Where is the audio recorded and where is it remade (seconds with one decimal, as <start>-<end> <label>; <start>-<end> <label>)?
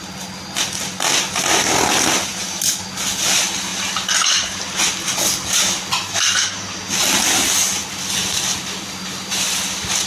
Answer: 0.0-7.8 recorded; 7.8-9.6 remade; 9.6-10.1 recorded